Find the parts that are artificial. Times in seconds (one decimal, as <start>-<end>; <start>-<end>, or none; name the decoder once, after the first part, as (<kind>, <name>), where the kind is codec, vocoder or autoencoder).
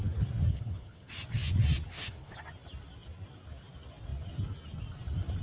0.5-1.1 (codec, HILCodec); 1.9-2.4